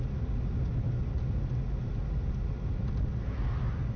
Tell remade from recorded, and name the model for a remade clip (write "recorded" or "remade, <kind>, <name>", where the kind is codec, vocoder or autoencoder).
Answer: recorded